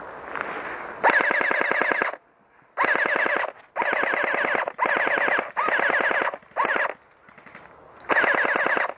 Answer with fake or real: real